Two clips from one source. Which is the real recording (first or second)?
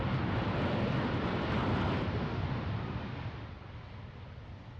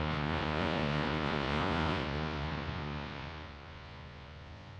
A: first